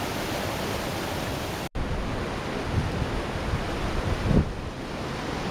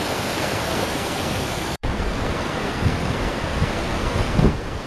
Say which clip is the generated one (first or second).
second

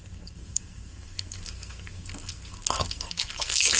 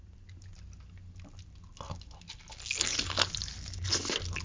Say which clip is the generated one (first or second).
first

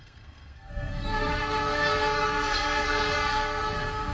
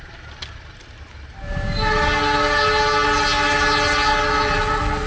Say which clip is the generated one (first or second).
first